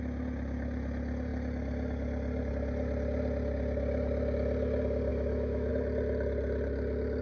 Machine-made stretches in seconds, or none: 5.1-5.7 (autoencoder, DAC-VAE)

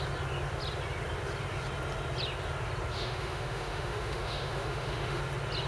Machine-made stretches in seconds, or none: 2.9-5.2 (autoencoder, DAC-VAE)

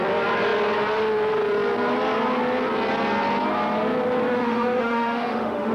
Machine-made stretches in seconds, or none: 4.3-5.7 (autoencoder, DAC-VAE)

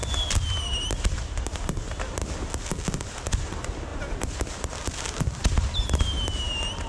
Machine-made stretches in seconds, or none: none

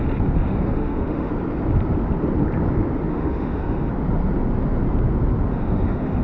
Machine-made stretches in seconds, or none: 0.4-1.3 (autoencoder, DAC-VAE); 3.1-3.9; 5.5-6.2

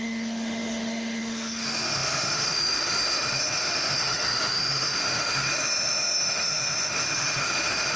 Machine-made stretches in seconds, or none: 0.0-8.0 (autoencoder, DAC-VAE)